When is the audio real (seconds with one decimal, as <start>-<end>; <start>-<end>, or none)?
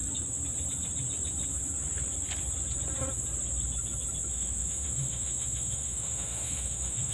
0.0-4.3